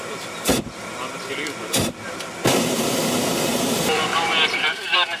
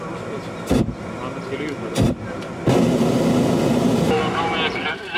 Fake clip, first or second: first